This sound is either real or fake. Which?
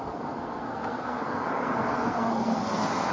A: fake